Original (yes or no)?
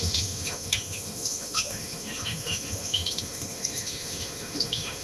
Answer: no